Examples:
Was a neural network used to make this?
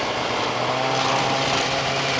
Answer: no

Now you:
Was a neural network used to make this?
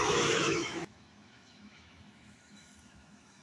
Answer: yes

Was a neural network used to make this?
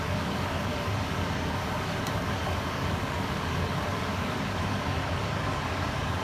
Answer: yes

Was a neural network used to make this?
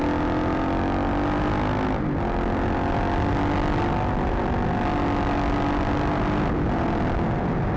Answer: no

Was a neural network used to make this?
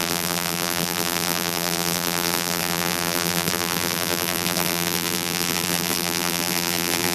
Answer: yes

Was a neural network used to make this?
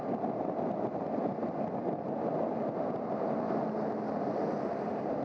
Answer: no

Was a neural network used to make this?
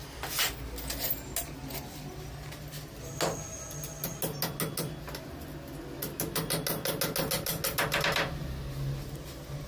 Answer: no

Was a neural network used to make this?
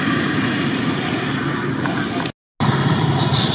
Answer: no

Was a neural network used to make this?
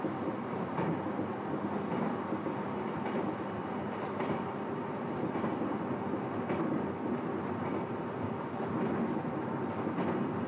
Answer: no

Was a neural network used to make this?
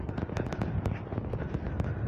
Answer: no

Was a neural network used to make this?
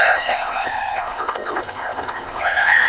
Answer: yes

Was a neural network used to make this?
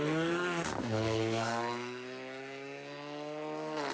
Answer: yes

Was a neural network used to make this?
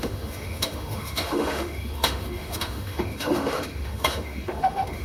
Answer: yes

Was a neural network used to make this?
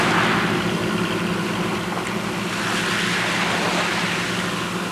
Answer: no